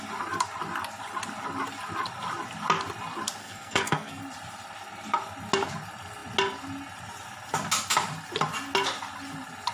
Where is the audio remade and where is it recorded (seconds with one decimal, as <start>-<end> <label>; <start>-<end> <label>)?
0.0-3.4 recorded; 3.4-4.2 remade; 4.2-9.7 recorded